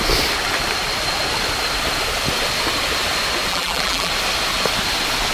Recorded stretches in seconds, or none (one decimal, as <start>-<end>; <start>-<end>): 0.0-3.5; 4.1-5.3